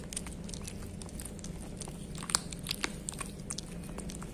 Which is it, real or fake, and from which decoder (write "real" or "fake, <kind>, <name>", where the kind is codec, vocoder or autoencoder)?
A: real